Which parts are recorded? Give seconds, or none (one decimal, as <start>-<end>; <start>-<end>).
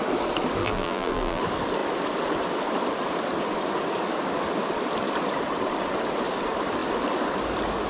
0.0-0.6; 1.4-7.9